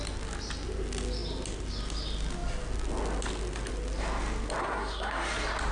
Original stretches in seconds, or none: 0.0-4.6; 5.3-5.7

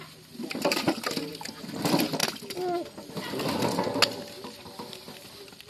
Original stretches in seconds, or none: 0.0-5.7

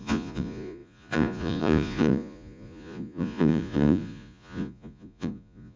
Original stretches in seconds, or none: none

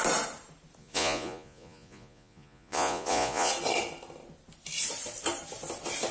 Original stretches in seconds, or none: 0.0-0.8; 3.5-6.1

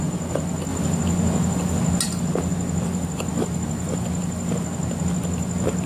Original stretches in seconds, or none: 0.0-5.9

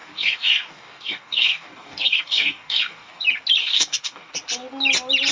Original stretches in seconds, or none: 3.2-3.6; 4.3-5.3